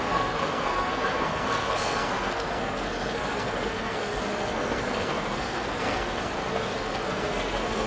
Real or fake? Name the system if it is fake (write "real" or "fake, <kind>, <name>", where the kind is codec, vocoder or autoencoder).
fake, codec, SNAC